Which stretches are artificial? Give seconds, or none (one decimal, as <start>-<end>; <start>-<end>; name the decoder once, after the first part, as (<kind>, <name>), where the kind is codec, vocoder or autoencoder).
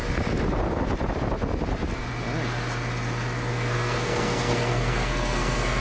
3.5-5.8 (codec, SNAC)